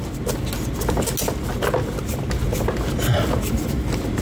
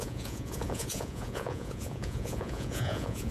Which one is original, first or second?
first